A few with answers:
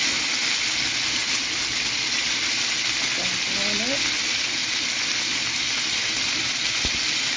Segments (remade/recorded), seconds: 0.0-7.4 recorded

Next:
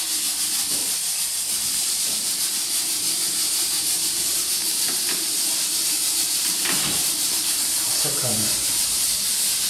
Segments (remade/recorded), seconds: 0.0-0.8 recorded; 0.8-2.0 remade; 2.0-4.6 recorded; 4.6-8.8 remade; 8.8-9.7 recorded

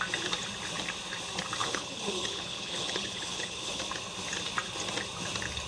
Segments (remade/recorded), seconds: 0.0-1.6 recorded; 1.6-3.8 remade; 3.8-5.7 recorded

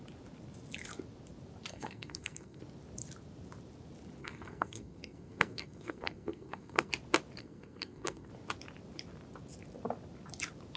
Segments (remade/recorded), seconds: 0.0-1.7 recorded; 1.7-2.6 remade; 2.6-4.2 recorded; 4.2-6.9 remade; 6.9-7.4 recorded; 7.4-8.3 remade; 8.3-10.8 recorded

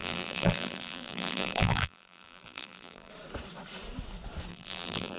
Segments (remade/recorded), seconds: 0.0-3.1 remade; 3.1-4.5 recorded; 4.5-5.2 remade

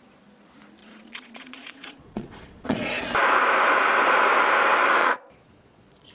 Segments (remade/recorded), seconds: 0.0-0.8 recorded; 0.8-2.9 remade; 2.9-5.0 recorded; 5.0-6.1 remade

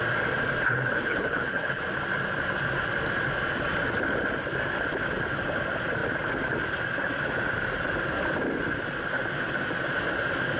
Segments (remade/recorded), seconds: 0.0-0.7 recorded; 0.7-1.8 remade; 1.8-10.6 recorded

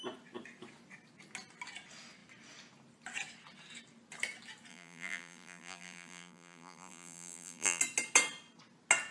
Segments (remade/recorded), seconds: 0.0-4.7 recorded; 4.7-7.8 remade; 7.8-9.1 recorded